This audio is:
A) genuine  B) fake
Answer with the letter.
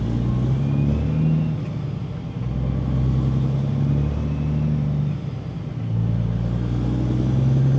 A